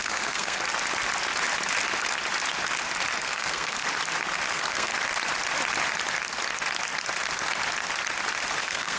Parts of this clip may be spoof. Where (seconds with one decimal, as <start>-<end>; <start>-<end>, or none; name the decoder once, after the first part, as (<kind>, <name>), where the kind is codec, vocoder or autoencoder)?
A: 0.0-0.6 (codec, SNAC); 3.2-3.8; 4.5-4.9; 8.6-9.0